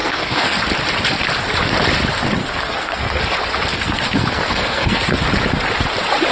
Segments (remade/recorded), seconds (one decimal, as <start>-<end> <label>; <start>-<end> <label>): 0.0-0.6 remade; 0.6-2.4 recorded; 2.4-3.2 remade; 3.2-3.7 recorded; 3.7-5.2 remade; 5.2-6.3 recorded

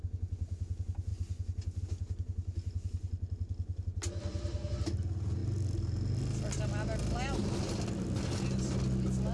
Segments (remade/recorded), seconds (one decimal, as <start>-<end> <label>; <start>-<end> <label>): 0.0-9.3 recorded

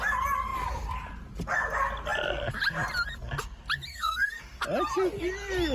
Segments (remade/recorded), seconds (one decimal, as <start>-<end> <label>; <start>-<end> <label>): 0.0-3.9 recorded; 3.9-4.4 remade; 4.4-5.7 recorded